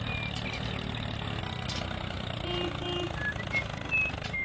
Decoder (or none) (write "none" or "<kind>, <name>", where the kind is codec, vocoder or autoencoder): none